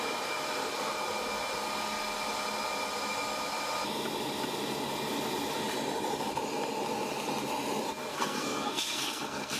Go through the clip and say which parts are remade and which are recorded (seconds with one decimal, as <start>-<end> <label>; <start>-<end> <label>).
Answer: 0.0-8.1 recorded; 8.1-9.6 remade